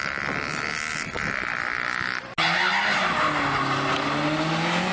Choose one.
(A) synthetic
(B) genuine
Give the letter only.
B